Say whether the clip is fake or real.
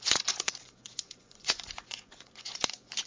fake